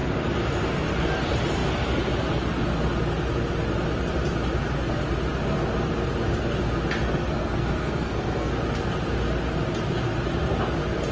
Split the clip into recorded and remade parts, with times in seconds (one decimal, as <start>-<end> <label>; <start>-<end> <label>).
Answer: 0.0-7.0 recorded; 7.0-8.5 remade; 8.5-11.1 recorded